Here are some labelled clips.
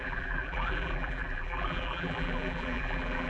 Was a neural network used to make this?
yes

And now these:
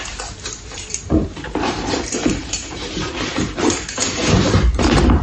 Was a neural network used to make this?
yes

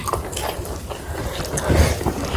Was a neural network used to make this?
no